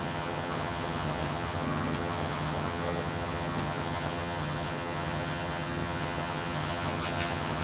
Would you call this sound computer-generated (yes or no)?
yes